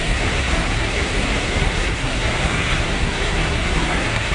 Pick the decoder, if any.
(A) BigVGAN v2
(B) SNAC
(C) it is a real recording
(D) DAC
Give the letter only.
B